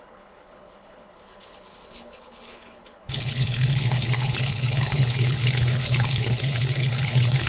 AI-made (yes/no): yes